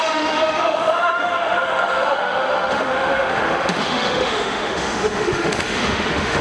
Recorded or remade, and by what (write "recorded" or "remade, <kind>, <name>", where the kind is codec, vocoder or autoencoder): remade, autoencoder, DAC-VAE